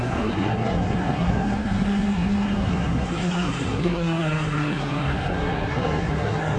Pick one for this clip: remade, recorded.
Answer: remade